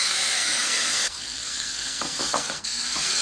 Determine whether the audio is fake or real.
fake